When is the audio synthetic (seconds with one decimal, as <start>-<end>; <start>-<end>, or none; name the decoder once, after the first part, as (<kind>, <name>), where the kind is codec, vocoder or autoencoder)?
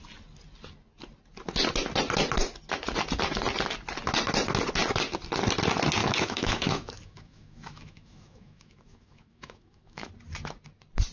6.0-10.1 (autoencoder, DAC-VAE)